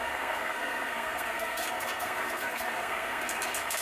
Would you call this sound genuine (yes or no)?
no